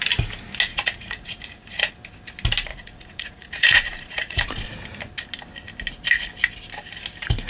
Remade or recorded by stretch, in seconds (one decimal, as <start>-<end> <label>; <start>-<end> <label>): 0.0-0.7 recorded; 0.7-1.9 remade; 1.9-2.7 recorded; 2.7-4.7 remade; 4.7-7.5 recorded